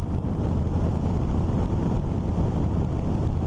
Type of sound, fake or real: fake